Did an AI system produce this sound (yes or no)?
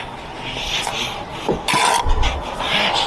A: no